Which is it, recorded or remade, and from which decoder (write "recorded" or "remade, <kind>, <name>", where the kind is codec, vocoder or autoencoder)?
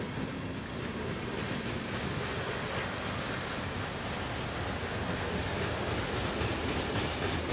recorded